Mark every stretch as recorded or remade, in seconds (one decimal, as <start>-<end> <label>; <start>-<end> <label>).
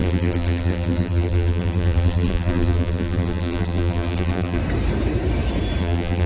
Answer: 0.0-4.6 remade; 4.6-5.8 recorded; 5.8-6.3 remade